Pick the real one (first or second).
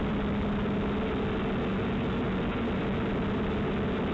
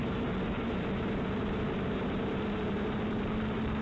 first